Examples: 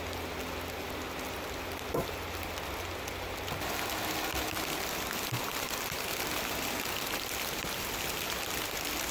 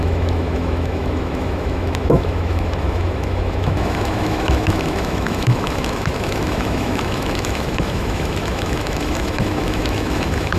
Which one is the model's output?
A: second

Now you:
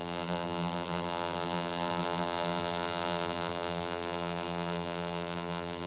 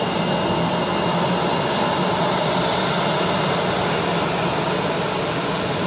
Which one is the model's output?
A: first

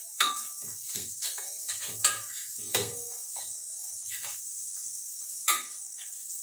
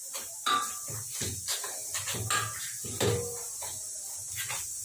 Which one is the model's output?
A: first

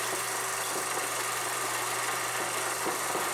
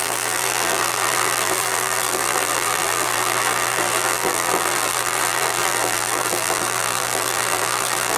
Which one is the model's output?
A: second